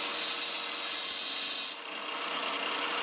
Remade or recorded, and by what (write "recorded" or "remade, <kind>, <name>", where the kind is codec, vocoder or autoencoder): recorded